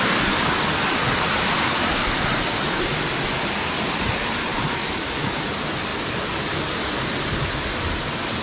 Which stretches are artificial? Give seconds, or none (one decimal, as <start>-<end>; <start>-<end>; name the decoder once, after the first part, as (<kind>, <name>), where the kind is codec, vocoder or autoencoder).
none